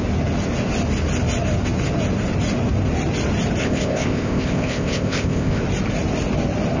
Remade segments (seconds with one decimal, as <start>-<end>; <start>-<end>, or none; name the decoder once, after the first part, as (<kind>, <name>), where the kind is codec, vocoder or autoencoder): 3.6-5.6 (codec, ZipCodec)